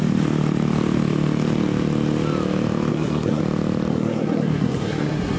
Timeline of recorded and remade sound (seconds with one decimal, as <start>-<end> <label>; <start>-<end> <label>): 0.0-2.9 recorded; 2.9-3.4 remade; 3.4-3.9 recorded; 3.9-5.4 remade